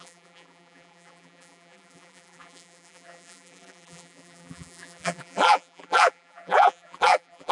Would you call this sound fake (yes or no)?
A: yes